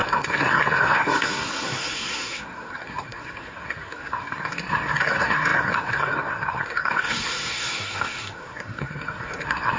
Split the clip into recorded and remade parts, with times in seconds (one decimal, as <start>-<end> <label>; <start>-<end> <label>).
0.0-9.8 remade